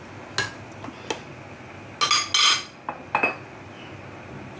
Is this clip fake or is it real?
real